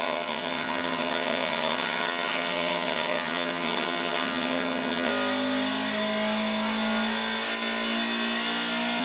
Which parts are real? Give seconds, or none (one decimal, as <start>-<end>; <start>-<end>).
5.1-9.0